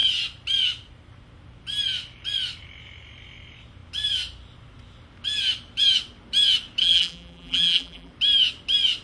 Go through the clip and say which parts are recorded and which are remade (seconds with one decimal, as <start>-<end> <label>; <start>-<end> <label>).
0.0-6.8 recorded; 6.8-8.1 remade; 8.1-9.0 recorded